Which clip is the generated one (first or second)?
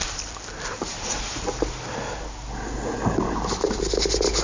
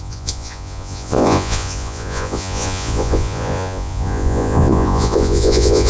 second